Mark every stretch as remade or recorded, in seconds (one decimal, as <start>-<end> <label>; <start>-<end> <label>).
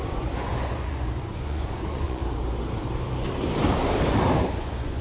0.0-2.2 remade; 2.2-4.4 recorded; 4.4-5.0 remade